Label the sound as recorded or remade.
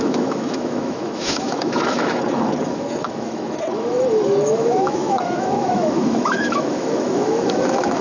remade